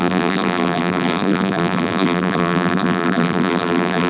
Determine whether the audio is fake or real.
fake